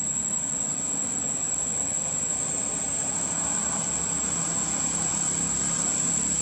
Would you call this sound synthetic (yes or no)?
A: no